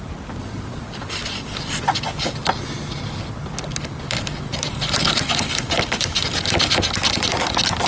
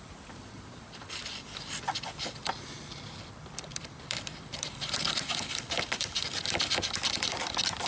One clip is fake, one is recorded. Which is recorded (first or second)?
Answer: first